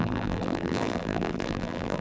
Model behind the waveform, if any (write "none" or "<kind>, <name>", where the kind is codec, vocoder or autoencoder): vocoder, BigVGAN v2